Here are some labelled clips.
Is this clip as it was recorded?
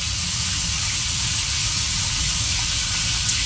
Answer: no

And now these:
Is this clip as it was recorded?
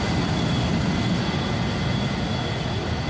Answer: yes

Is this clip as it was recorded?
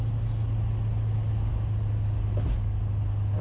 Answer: yes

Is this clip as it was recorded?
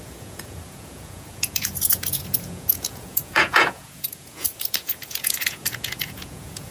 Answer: no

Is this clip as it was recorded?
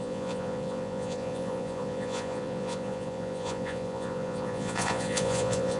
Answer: no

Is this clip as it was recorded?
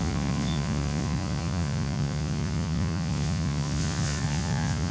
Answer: no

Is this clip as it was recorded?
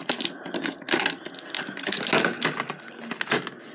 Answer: yes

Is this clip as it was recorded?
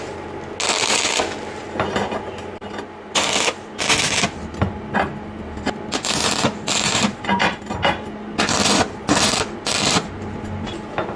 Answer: yes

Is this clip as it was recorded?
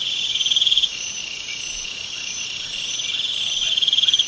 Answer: no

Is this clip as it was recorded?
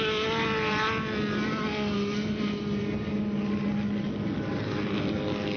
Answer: yes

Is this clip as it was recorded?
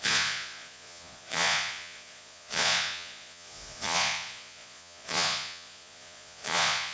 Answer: no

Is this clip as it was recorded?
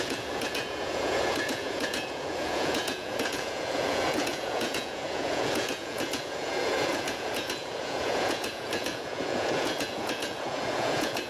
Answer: no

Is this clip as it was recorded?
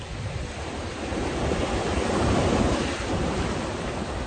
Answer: yes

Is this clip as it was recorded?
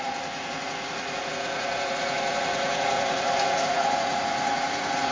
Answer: no